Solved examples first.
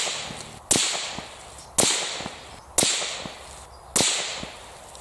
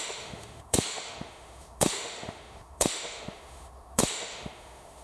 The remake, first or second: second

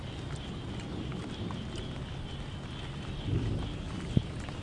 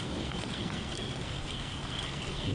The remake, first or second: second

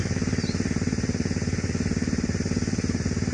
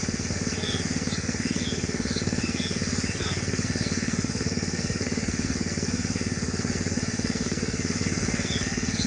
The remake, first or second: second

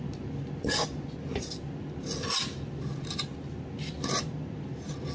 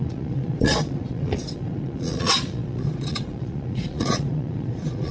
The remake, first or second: second